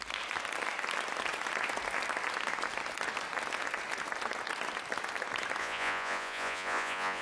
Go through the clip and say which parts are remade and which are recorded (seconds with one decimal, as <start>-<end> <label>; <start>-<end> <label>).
0.0-5.6 recorded; 5.6-7.2 remade